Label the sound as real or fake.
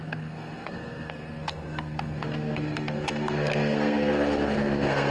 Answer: fake